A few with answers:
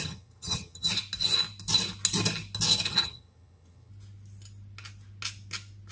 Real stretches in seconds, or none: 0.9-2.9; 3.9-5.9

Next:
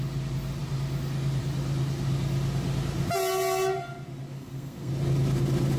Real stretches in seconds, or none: 0.0-4.3; 4.9-5.8

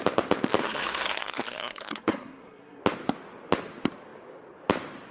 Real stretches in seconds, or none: 0.0-0.6; 2.8-5.1

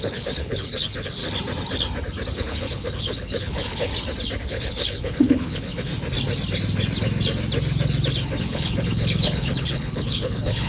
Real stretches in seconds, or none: 1.2-2.3; 3.9-4.4; 5.9-8.4

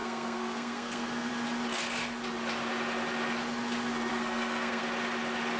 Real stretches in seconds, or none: 1.3-4.1; 4.8-5.6

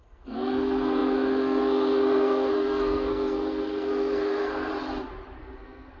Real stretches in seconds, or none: 4.7-5.4

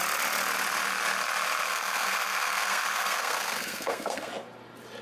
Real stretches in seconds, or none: 0.0-1.6; 4.3-5.0